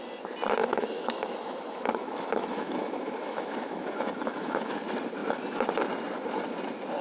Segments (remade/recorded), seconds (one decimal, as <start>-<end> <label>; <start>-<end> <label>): 0.0-0.6 recorded; 0.6-4.7 remade; 4.7-7.0 recorded